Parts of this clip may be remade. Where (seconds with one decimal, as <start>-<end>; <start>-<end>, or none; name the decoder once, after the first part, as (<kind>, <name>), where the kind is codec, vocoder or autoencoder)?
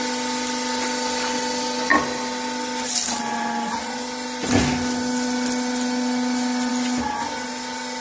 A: none